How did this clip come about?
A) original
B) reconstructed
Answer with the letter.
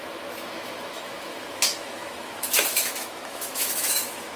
B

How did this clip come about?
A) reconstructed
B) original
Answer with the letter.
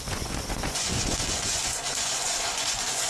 A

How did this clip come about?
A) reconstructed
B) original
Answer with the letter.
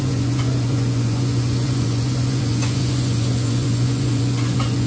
A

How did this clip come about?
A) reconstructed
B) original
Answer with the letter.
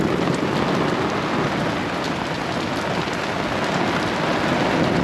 B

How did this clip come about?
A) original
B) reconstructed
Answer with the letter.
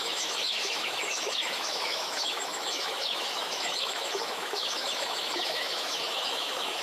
B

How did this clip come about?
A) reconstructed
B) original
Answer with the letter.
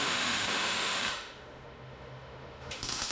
A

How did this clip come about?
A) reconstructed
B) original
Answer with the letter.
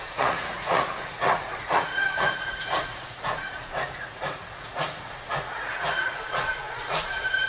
A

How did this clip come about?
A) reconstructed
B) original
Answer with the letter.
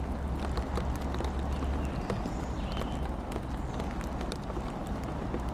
B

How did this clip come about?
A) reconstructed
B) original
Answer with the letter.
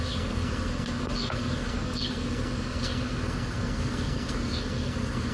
A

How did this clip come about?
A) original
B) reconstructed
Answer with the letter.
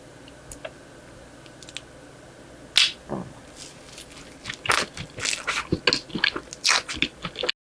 A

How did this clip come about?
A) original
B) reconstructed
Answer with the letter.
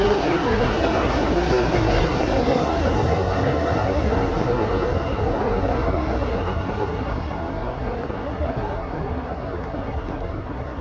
B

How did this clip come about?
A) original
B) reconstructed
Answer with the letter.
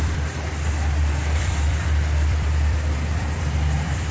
B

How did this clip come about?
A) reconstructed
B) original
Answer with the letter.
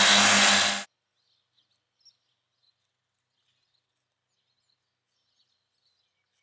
B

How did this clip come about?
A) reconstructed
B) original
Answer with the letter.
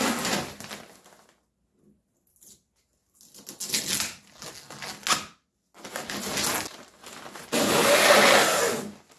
B